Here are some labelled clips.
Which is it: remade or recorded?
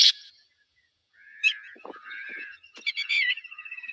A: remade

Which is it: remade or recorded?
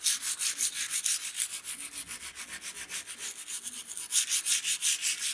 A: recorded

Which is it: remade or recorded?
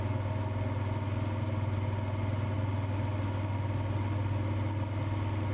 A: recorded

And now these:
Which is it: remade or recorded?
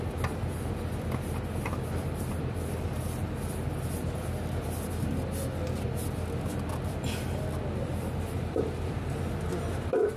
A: recorded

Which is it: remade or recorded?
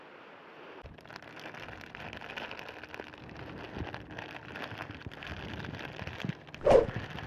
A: recorded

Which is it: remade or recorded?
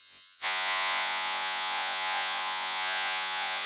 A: remade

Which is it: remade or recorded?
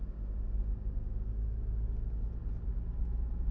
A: recorded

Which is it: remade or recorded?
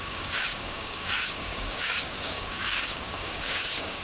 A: remade